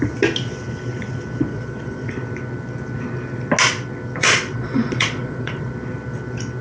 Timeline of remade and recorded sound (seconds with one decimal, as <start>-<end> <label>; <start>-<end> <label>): 0.0-1.5 recorded; 1.5-2.1 remade; 2.1-4.2 recorded; 4.2-5.7 remade; 5.7-6.6 recorded